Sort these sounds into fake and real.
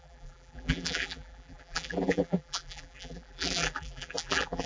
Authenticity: fake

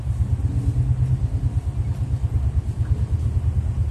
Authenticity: real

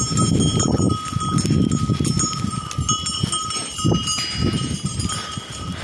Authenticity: real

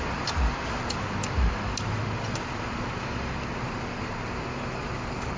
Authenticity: real